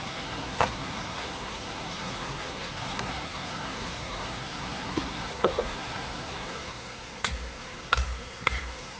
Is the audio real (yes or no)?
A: no